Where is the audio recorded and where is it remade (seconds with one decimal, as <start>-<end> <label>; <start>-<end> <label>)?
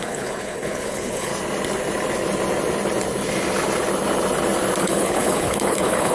0.0-1.3 remade; 1.3-4.8 recorded; 4.8-6.1 remade